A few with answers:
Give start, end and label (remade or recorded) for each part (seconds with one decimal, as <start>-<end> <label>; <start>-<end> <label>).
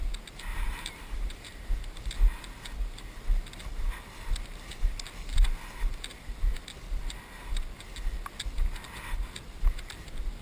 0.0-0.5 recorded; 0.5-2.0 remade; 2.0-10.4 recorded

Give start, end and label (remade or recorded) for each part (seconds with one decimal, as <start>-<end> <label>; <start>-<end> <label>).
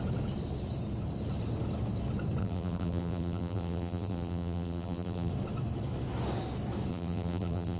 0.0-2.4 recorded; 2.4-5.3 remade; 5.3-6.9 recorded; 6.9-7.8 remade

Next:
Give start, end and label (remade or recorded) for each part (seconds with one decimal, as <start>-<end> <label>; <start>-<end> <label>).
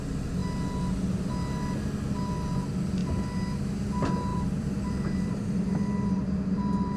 0.0-4.3 recorded; 4.3-5.5 remade; 5.5-7.0 recorded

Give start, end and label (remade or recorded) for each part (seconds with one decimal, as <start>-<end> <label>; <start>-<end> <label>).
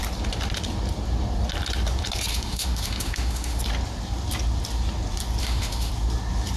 0.0-2.3 recorded; 2.3-3.6 remade; 3.6-5.4 recorded; 5.4-5.9 remade; 5.9-6.6 recorded